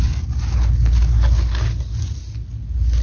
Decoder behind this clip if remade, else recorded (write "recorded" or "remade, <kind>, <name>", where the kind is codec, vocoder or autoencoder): recorded